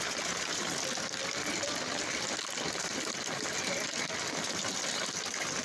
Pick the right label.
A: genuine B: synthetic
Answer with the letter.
A